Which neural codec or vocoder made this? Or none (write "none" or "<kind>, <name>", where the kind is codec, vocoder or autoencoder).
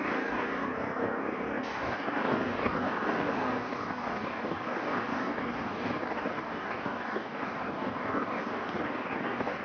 codec, DAC